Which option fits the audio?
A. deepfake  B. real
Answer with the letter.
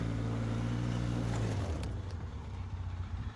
A